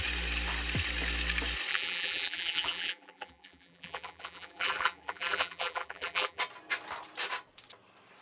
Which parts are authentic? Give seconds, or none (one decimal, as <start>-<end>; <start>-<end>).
0.0-1.7; 6.4-8.2